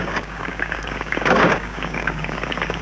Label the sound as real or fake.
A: fake